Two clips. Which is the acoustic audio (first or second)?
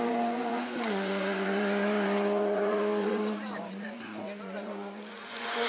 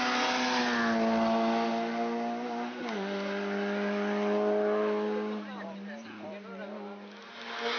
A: second